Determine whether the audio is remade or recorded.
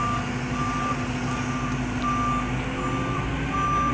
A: recorded